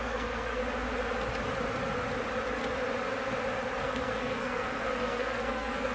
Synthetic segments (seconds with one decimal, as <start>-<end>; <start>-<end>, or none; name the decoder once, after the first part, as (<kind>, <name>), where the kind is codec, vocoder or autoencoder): 0.0-0.6 (codec, SNAC); 3.8-5.9